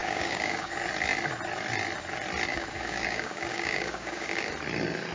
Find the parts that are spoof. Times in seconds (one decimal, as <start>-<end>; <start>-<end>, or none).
0.0-0.7; 2.5-4.5